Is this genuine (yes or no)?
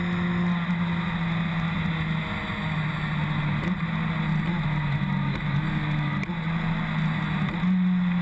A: yes